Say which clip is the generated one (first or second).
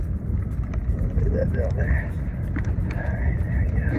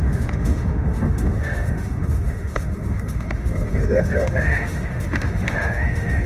second